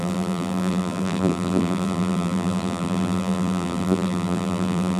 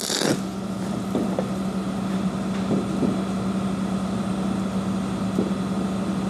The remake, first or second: first